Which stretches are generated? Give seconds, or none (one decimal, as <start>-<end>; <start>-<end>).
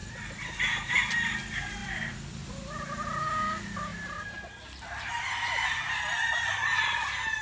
0.0-1.3; 1.8-2.4; 3.9-6.8